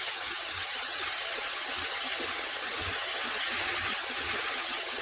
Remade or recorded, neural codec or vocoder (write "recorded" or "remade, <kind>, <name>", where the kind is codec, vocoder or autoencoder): remade, vocoder, HiFi-GAN